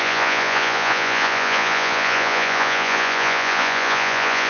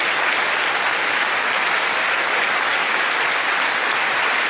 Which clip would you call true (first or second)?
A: second